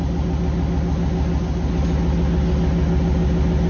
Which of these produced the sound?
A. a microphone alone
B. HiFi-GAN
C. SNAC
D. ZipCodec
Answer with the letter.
A